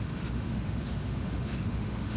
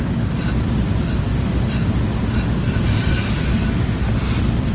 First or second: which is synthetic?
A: first